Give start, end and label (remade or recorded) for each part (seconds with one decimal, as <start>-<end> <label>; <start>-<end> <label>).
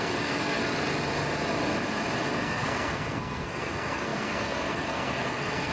0.0-0.6 remade; 0.6-2.3 recorded; 2.3-5.7 remade